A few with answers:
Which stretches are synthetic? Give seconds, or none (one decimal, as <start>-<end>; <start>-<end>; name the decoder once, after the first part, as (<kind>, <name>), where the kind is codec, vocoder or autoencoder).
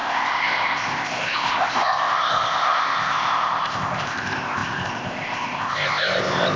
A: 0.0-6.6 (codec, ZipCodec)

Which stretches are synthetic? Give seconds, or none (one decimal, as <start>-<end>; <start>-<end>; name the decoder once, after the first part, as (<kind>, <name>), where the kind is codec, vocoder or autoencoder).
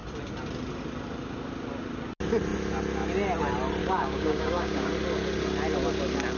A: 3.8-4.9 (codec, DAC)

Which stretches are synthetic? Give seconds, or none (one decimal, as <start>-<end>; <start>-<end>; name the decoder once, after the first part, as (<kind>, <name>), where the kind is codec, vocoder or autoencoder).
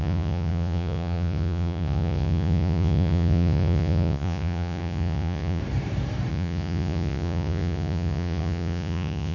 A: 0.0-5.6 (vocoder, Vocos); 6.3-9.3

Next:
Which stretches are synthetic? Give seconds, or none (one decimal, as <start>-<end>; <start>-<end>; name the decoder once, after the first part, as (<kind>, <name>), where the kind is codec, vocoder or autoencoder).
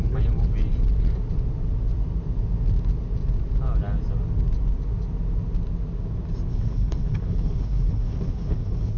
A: 6.5-9.0 (codec, HILCodec)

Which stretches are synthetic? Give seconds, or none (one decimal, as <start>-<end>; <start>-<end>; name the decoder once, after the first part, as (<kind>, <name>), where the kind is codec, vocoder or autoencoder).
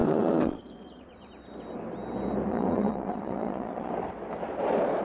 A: 0.0-1.3 (vocoder, Vocos); 2.5-3.9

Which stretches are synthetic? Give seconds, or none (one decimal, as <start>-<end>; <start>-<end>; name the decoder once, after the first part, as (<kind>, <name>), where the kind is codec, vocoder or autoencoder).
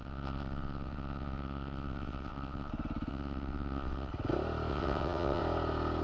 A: 0.0-2.7 (vocoder, WaveNeXt); 3.1-4.1; 4.7-5.4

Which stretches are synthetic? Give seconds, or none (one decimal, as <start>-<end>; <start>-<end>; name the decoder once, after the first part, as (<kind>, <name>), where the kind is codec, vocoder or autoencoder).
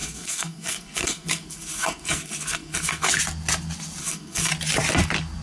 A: 0.0-3.2 (codec, SNAC); 4.0-4.5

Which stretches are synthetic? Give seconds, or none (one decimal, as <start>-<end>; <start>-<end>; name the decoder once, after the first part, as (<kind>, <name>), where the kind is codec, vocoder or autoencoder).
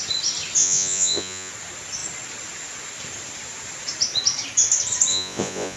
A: 0.6-1.5 (vocoder, Vocos); 5.1-5.8